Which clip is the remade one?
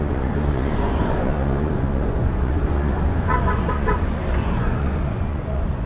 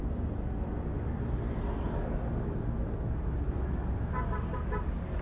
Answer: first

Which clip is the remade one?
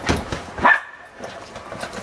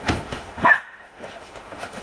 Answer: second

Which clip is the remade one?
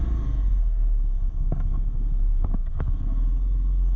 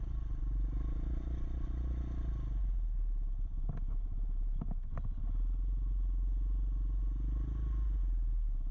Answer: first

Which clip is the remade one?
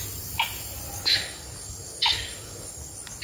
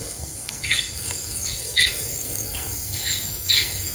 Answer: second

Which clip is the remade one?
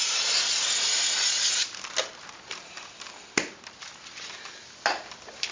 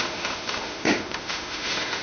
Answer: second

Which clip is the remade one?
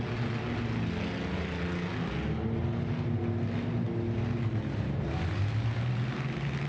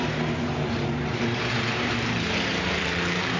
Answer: second